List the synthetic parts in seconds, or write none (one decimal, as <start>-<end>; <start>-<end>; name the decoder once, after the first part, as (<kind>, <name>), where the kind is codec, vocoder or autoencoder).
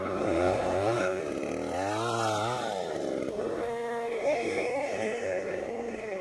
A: 0.0-1.2 (codec, SNAC); 3.3-6.2